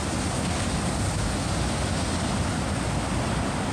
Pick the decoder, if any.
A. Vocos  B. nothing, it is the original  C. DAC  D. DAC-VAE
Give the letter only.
B